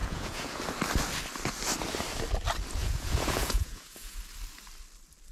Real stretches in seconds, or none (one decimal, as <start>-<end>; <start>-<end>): 0.6-2.8; 4.2-5.3